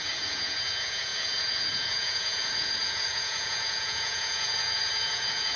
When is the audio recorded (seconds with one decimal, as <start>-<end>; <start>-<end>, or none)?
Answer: none